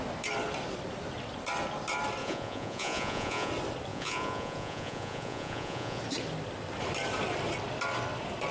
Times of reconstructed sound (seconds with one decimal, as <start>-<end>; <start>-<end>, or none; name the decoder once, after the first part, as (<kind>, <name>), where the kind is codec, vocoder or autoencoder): 2.2-3.5 (vocoder, Vocos); 3.9-6.0